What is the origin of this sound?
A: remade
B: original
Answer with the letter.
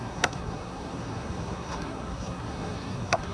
A